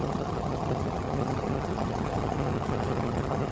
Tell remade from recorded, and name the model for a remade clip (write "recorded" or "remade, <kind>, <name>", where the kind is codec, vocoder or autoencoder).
remade, vocoder, HiFi-GAN